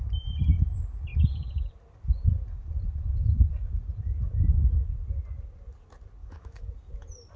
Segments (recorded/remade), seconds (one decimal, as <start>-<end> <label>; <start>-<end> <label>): 0.0-6.2 recorded; 6.2-6.7 remade; 6.7-7.4 recorded